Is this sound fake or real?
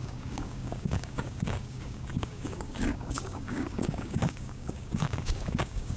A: fake